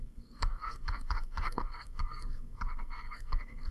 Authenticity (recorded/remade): remade